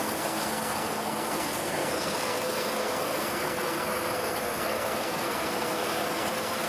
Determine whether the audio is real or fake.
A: fake